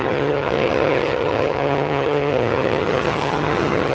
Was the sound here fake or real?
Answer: fake